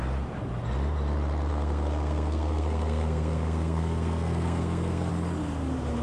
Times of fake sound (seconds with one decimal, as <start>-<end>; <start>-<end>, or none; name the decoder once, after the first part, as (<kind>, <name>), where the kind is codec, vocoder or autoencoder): 1.5-5.1 (codec, SNAC)